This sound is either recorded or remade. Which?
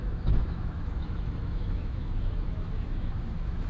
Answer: remade